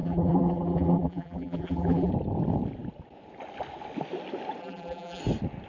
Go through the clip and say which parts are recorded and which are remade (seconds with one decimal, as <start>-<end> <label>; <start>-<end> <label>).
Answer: 0.0-2.1 remade; 2.1-4.6 recorded; 4.6-5.2 remade; 5.2-5.7 recorded